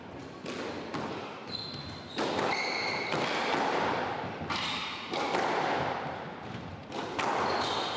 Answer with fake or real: real